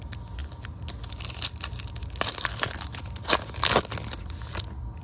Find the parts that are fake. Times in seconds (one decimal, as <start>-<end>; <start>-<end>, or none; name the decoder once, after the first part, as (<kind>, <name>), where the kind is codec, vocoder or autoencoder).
none